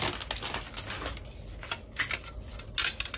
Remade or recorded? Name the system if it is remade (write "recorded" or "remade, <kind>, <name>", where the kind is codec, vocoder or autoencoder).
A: recorded